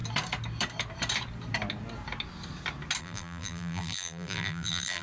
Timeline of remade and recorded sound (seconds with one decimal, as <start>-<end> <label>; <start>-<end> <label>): 0.0-3.0 recorded; 3.0-5.0 remade